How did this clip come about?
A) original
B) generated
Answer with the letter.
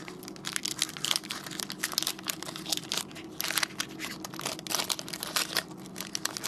A